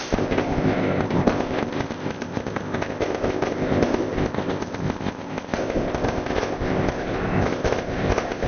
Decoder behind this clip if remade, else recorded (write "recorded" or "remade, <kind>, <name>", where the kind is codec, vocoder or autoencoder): remade, codec, ZipCodec